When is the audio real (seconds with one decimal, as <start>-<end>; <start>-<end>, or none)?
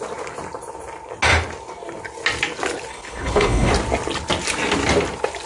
0.0-2.9; 3.7-5.5